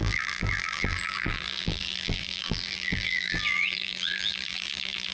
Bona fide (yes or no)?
no